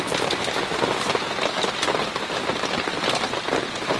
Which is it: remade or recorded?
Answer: recorded